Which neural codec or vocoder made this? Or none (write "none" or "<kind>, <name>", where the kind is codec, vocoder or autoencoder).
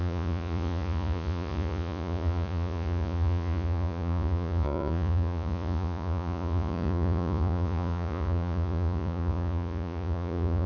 vocoder, Vocos